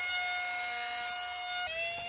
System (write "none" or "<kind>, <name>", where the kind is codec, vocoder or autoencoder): none